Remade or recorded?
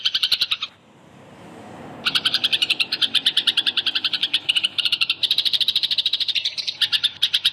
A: remade